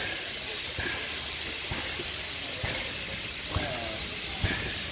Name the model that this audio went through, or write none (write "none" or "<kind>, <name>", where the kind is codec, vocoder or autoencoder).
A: none